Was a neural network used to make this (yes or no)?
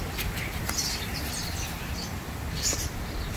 no